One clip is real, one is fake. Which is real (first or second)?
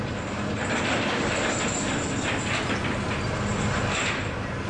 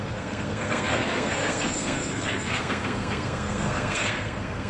first